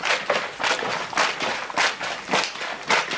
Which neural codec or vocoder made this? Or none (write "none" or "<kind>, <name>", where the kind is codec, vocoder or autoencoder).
none